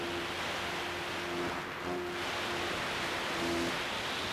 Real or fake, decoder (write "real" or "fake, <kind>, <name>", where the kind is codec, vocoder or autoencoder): real